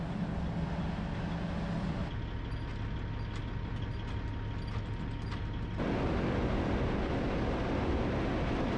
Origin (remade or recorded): recorded